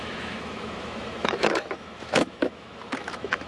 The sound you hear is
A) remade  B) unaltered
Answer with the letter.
A